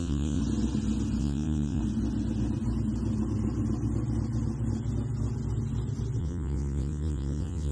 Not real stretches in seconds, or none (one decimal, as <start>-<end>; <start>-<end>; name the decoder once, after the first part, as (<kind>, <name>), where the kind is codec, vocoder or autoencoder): 0.0-0.4 (vocoder, WaveNeXt); 1.2-1.8; 6.2-7.7